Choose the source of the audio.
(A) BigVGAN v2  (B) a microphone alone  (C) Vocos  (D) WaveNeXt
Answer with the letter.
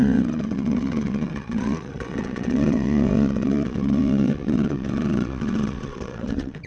D